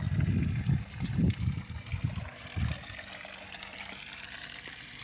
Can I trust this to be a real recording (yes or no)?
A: yes